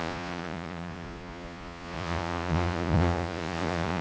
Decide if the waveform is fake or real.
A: fake